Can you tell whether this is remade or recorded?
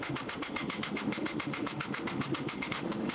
remade